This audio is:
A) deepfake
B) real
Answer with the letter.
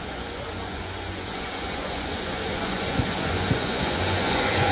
A